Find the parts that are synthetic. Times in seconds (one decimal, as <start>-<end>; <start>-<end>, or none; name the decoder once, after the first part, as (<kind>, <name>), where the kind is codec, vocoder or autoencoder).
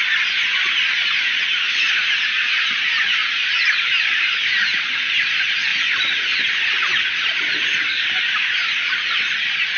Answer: none